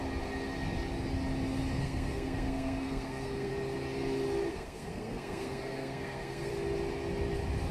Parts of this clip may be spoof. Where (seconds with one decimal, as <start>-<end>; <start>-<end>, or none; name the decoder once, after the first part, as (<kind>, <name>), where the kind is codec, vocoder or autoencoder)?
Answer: 1.8-3.5 (codec, SNAC); 4.5-6.5